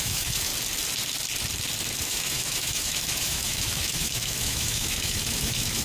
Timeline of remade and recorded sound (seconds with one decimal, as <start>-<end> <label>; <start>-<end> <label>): 0.0-0.5 remade; 0.5-2.0 recorded; 2.0-5.8 remade